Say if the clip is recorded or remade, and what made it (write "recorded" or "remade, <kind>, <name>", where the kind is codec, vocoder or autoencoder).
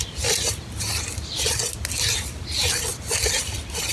recorded